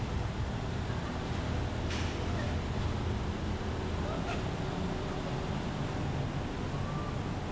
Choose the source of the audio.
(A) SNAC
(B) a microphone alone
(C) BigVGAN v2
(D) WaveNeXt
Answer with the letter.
B